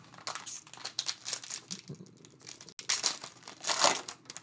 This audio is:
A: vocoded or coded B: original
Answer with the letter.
B